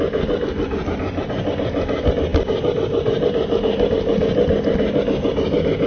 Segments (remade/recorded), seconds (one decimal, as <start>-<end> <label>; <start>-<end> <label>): 0.0-5.9 recorded